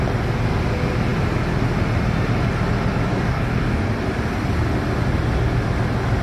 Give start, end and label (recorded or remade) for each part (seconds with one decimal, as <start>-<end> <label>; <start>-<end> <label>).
0.0-3.1 recorded; 3.1-3.8 remade; 3.8-6.2 recorded